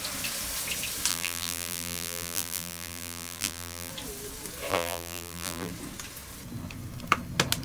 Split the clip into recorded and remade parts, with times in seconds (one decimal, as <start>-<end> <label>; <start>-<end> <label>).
0.0-1.1 recorded; 1.1-3.9 remade; 3.9-4.7 recorded; 4.7-5.7 remade; 5.7-7.6 recorded